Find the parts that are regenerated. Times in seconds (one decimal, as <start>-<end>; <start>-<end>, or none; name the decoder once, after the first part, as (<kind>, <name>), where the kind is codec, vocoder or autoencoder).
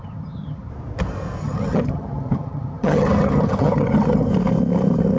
0.0-0.7 (vocoder, HiFi-GAN); 1.4-4.3